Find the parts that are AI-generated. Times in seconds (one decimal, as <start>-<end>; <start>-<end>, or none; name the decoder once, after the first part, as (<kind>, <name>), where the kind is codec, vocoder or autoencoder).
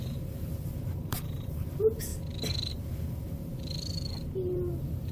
0.0-2.1 (vocoder, BigVGAN v2); 2.7-3.5; 4.5-5.1